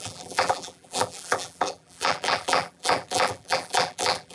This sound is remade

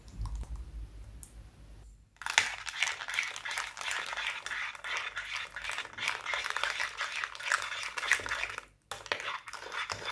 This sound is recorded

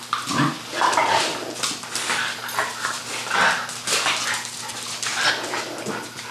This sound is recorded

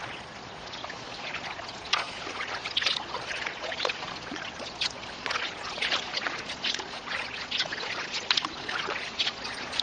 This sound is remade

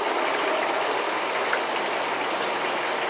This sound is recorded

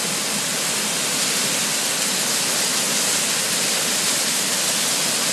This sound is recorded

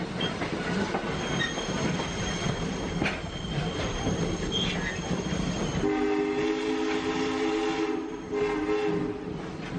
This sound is recorded